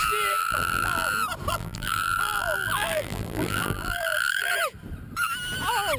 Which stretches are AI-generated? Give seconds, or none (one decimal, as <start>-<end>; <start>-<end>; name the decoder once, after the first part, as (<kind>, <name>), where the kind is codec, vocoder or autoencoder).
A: 0.4-1.1 (vocoder, BigVGAN v2); 1.5-4.5